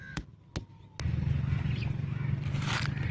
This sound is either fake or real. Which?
real